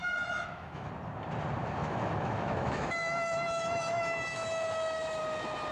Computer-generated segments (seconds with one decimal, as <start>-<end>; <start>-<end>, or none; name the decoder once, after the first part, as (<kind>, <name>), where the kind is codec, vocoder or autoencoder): 0.0-0.9 (autoencoder, DAC-VAE); 1.8-5.2

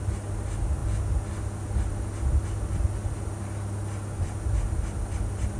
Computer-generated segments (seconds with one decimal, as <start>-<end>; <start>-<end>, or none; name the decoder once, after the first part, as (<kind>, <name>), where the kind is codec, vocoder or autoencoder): none

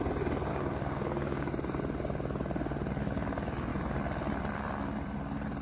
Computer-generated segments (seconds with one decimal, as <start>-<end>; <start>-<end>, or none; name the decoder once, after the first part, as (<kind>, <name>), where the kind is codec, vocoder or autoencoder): 0.5-1.5 (codec, DAC)

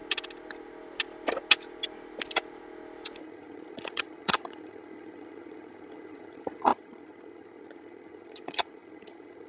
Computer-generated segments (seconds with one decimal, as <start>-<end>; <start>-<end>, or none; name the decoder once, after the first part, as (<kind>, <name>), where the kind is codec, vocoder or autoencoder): 3.2-9.5 (vocoder, HiFi-GAN)

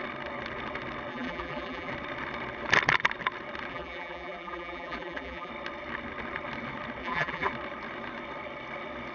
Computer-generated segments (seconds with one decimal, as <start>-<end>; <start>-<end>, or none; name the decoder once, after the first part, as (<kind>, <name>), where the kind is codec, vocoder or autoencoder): 1.1-1.9 (vocoder, BigVGAN v2); 3.7-5.5; 7.0-7.5

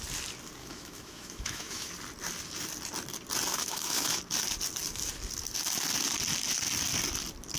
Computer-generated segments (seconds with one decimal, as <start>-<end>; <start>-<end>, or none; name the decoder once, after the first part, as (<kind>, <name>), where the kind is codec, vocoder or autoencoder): 0.6-1.9 (autoencoder, DAC-VAE); 3.5-4.2